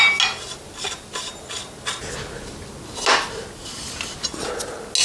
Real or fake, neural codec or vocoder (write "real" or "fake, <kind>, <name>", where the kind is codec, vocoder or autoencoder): real